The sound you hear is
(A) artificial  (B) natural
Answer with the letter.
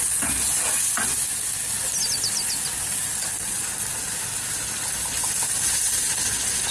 B